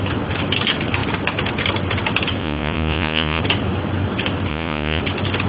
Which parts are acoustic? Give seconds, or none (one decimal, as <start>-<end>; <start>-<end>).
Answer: 0.0-2.4; 3.4-4.5; 5.0-5.5